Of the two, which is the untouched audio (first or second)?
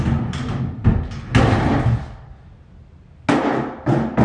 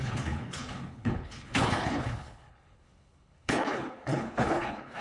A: first